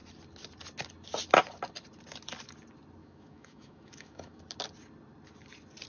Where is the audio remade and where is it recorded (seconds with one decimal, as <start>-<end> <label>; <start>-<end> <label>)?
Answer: 0.0-3.0 recorded; 3.0-4.4 remade; 4.4-5.9 recorded